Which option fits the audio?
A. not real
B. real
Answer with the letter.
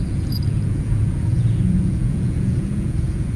A